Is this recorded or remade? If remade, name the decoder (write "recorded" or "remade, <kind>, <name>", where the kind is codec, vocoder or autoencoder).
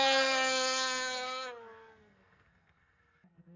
remade, codec, SNAC